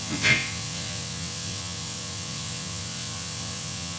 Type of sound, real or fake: fake